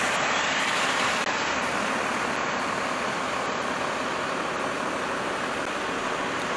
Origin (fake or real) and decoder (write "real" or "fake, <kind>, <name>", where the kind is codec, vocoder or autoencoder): real